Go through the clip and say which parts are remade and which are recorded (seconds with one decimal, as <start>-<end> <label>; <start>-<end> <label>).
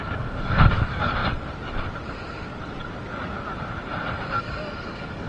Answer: 0.0-1.2 remade; 1.2-4.4 recorded; 4.4-5.3 remade